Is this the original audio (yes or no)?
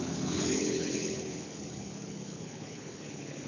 no